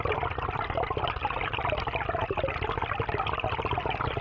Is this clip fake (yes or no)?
no